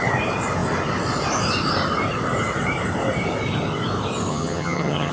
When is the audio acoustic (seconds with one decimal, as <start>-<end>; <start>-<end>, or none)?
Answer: 0.0-4.3